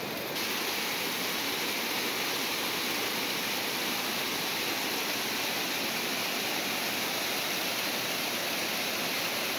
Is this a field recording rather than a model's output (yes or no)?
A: yes